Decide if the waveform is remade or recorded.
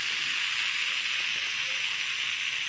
recorded